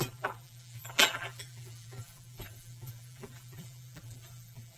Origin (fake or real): fake